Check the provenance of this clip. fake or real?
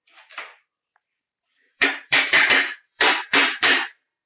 fake